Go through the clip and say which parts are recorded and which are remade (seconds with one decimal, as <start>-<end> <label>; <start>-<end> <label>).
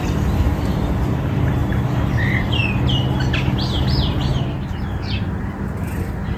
0.0-1.6 remade; 1.6-2.1 recorded; 2.1-2.6 remade; 2.6-4.8 recorded; 4.8-6.4 remade